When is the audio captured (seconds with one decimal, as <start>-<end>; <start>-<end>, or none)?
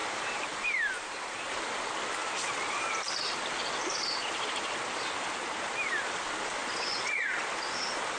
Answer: 1.3-8.2